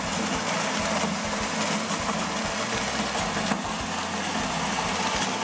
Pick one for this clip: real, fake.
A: real